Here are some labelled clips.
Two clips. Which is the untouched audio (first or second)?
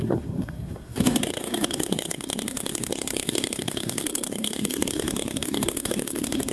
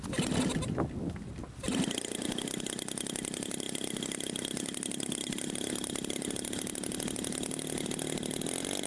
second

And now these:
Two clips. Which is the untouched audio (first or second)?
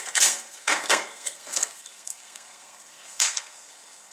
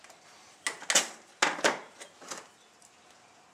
second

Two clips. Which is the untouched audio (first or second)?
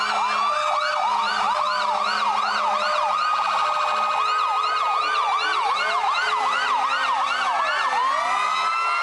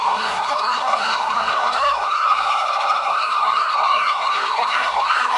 first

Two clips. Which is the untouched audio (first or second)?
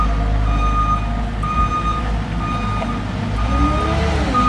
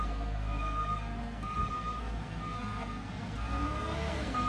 first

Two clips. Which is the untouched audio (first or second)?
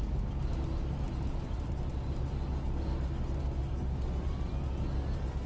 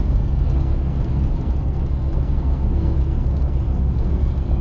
first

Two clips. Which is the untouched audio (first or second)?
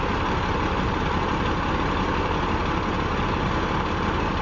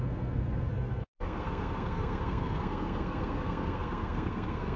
first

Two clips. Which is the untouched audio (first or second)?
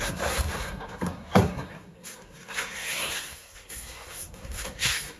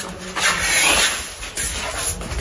second